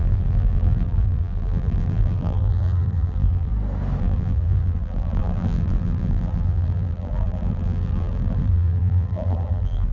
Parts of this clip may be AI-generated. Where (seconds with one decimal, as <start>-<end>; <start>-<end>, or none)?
0.0-3.5; 4.0-9.9